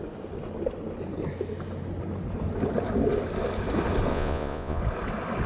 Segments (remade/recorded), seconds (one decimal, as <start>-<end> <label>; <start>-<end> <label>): 0.0-4.1 recorded; 4.1-4.8 remade; 4.8-5.5 recorded